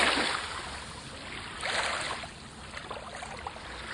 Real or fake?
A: real